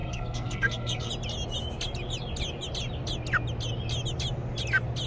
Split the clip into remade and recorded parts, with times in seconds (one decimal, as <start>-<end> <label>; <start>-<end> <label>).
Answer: 0.0-1.1 remade; 1.1-5.1 recorded